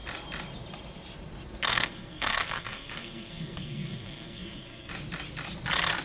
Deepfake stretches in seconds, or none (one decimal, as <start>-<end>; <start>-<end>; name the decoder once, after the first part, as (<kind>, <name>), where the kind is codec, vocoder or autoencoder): 1.7-4.9 (codec, SNAC)